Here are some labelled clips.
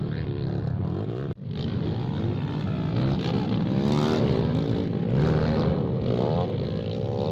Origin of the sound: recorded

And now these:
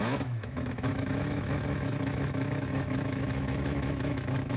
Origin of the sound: remade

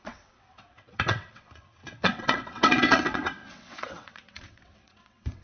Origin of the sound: remade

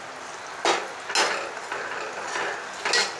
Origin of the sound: recorded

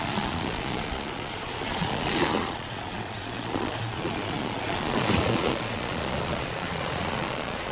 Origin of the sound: remade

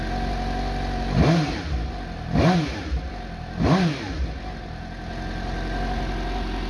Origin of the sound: recorded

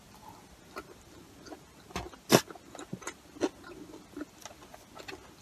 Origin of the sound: recorded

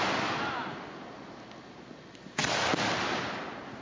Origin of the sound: recorded